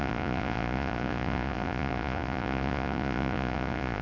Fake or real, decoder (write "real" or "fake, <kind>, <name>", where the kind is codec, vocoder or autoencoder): fake, vocoder, Vocos